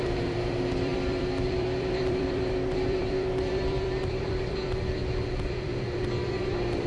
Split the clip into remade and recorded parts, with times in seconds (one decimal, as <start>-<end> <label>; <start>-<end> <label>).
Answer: 0.0-5.0 remade; 5.0-5.5 recorded; 5.5-6.9 remade